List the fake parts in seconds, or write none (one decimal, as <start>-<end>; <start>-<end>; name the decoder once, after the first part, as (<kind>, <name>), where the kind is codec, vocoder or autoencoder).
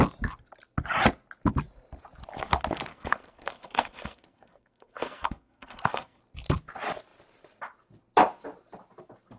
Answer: 2.9-6.2 (codec, SNAC)